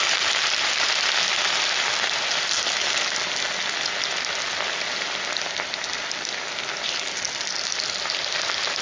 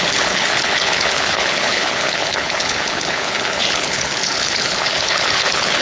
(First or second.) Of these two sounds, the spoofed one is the second